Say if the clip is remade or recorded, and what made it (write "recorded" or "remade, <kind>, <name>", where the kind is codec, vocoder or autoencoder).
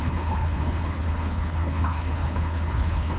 remade, codec, HILCodec